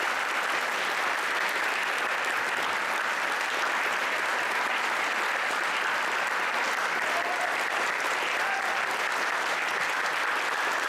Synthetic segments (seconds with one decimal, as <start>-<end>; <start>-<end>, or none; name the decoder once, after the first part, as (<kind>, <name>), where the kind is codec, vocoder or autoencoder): none